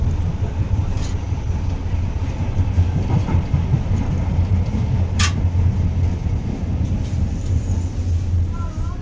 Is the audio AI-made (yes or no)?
no